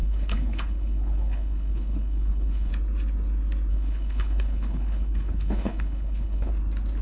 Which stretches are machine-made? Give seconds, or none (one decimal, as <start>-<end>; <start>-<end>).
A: 0.0-2.7; 3.7-6.5